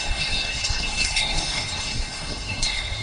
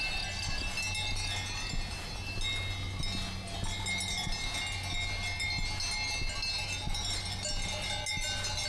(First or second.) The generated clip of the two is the first